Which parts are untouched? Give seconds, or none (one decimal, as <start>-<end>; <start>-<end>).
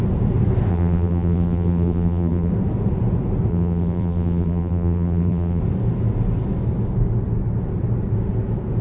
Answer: 0.0-0.7; 2.5-3.5; 5.6-8.8